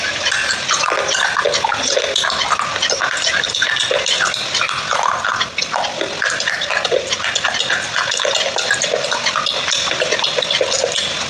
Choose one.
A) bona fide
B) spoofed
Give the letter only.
A